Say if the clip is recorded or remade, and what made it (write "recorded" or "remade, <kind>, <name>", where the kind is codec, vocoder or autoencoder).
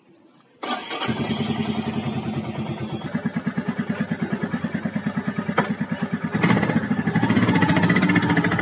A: recorded